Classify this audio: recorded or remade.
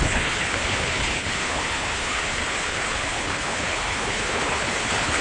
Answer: remade